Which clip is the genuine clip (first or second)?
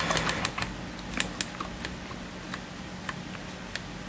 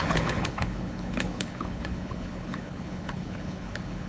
first